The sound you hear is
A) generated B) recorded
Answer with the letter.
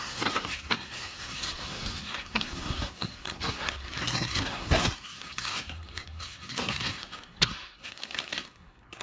A